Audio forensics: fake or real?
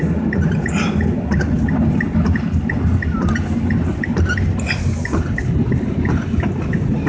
real